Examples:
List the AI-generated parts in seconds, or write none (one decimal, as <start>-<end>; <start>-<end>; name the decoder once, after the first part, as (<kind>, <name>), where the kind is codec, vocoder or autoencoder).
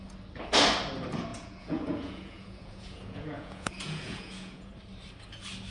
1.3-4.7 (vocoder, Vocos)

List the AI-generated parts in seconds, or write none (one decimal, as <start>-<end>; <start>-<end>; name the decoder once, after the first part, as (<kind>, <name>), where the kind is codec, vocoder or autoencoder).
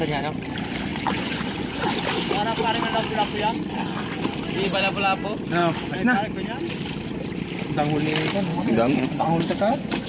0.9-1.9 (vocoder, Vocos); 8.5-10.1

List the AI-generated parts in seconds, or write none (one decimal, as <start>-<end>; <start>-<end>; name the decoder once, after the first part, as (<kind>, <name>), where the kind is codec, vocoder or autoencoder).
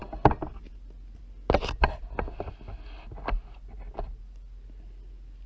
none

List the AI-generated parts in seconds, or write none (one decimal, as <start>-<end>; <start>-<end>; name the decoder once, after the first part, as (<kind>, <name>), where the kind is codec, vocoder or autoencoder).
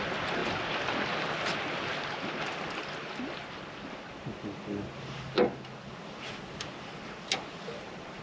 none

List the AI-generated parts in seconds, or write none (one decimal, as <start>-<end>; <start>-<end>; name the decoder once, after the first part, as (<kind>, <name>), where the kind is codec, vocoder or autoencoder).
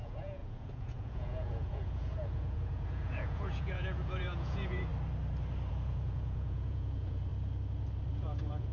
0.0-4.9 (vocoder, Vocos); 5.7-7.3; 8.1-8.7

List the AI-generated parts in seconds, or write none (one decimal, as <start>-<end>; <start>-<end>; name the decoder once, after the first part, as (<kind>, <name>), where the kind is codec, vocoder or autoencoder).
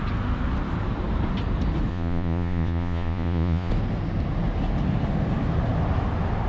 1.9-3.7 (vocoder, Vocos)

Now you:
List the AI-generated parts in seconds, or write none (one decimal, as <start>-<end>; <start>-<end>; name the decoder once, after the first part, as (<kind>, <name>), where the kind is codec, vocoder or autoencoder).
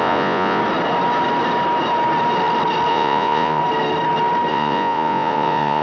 0.0-0.6 (vocoder, Vocos); 2.9-3.6; 4.5-5.8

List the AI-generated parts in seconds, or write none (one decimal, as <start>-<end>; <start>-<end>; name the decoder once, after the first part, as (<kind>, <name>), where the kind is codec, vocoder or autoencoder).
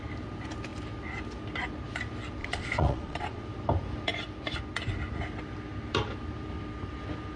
2.4-3.4 (vocoder, Vocos)